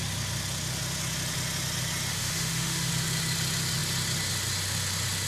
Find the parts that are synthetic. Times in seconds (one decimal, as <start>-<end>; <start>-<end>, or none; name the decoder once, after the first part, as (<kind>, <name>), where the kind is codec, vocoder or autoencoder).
2.1-2.9 (autoencoder, DAC-VAE)